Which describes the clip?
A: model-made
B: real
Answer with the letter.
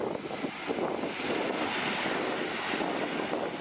B